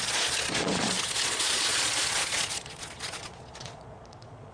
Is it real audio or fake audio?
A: fake